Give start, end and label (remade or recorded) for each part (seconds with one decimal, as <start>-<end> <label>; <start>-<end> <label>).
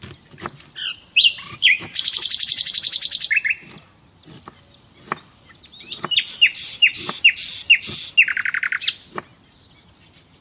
0.0-0.8 recorded; 0.8-2.7 remade; 2.7-6.5 recorded; 6.5-7.2 remade; 7.2-10.4 recorded